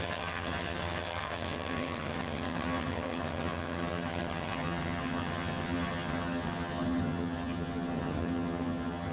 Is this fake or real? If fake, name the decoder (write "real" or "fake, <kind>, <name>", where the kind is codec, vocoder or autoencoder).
fake, vocoder, HiFi-GAN